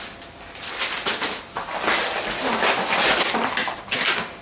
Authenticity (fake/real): real